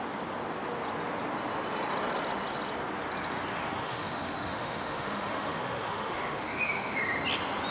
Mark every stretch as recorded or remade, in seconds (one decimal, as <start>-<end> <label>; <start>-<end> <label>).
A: 0.0-3.5 recorded; 3.5-7.0 remade; 7.0-7.7 recorded